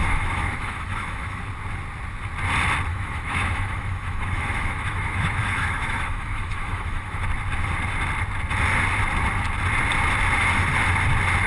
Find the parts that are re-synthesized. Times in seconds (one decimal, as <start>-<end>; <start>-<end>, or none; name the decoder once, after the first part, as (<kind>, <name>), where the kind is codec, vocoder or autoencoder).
0.0-1.4 (autoencoder, DAC-VAE); 2.9-7.2